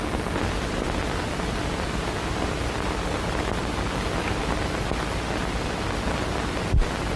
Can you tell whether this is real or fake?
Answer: real